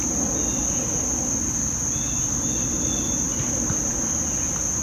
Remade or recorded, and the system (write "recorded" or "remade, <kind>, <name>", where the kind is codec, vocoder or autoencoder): recorded